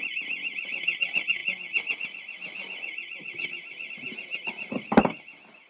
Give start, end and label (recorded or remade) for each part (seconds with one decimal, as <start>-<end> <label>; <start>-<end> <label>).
0.0-5.7 recorded